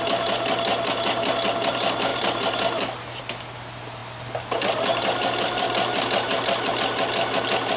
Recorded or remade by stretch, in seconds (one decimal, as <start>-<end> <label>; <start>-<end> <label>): 0.0-2.1 recorded; 2.1-3.2 remade; 3.2-7.8 recorded